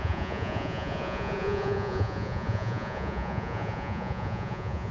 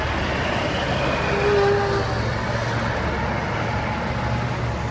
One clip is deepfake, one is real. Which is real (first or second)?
second